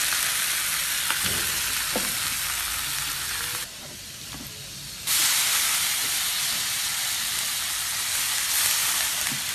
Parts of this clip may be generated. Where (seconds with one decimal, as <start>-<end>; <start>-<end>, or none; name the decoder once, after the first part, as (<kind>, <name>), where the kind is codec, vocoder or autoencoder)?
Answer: 3.6-4.5 (vocoder, BigVGAN v2)